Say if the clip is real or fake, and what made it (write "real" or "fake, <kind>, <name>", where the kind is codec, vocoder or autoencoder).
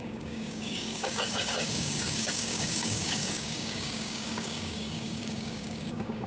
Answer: fake, codec, DAC